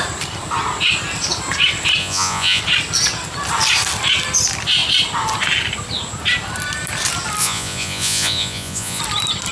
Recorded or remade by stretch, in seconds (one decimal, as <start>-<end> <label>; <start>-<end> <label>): 0.0-2.0 recorded; 2.0-2.6 remade; 2.6-7.4 recorded; 7.4-9.0 remade; 9.0-9.5 recorded